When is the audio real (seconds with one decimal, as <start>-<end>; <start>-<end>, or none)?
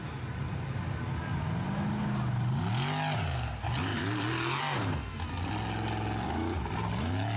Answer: 0.0-7.4